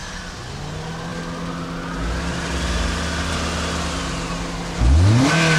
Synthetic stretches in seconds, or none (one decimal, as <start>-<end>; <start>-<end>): none